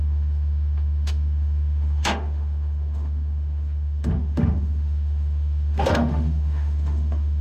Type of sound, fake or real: fake